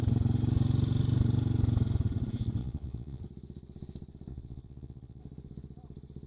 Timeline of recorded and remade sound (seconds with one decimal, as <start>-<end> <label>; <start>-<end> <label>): 0.0-2.6 recorded; 2.6-3.2 remade; 3.2-4.3 recorded; 4.3-5.2 remade; 5.2-6.3 recorded